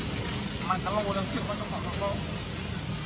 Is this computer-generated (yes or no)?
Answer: no